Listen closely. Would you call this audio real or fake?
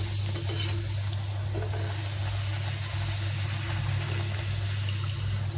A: real